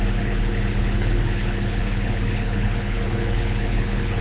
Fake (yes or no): yes